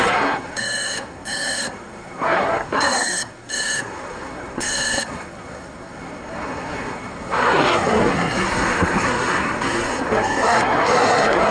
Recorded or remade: remade